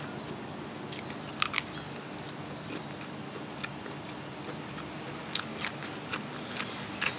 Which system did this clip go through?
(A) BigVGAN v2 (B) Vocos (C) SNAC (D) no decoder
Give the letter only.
D